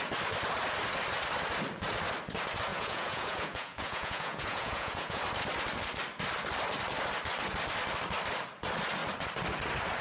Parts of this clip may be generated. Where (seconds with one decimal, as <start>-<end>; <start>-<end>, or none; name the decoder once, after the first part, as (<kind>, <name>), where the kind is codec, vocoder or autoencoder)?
2.7-5.2 (vocoder, Vocos)